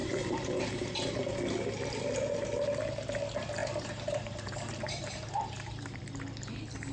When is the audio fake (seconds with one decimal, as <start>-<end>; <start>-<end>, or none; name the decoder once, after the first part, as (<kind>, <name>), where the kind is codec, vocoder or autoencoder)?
0.0-0.6 (vocoder, BigVGAN v2); 3.6-6.0